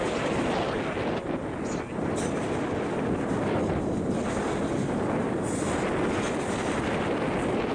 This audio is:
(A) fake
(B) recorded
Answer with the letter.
B